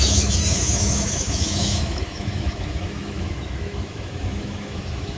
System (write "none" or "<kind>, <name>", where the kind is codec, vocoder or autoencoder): autoencoder, DAC-VAE